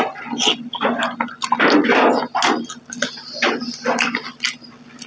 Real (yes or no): yes